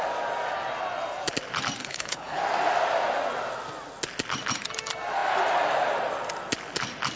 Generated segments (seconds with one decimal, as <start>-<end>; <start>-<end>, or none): 1.8-2.4